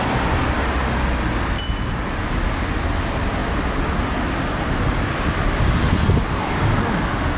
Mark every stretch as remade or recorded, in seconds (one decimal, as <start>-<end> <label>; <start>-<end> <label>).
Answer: 0.0-7.4 recorded